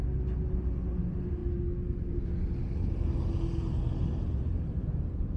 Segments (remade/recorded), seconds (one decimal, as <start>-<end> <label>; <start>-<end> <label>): 0.0-5.4 recorded